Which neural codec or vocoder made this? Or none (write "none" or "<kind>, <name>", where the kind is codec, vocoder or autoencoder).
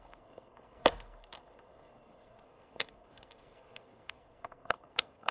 codec, SNAC